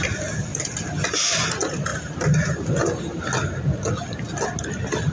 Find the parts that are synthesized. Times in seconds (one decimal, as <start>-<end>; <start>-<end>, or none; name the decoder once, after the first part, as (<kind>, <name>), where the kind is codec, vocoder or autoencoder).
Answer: none